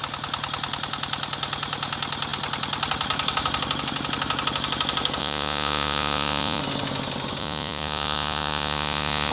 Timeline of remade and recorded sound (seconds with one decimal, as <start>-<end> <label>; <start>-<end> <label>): 0.0-5.2 recorded; 5.2-6.6 remade; 6.6-7.4 recorded; 7.4-9.3 remade